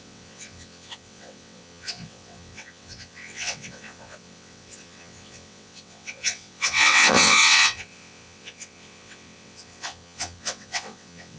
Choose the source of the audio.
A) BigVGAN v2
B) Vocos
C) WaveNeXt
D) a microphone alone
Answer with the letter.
C